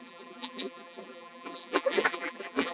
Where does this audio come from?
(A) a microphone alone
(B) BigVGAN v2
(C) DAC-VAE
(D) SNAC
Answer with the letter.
B